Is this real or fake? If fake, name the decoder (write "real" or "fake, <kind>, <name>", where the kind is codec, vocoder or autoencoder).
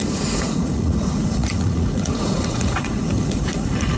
fake, vocoder, Vocos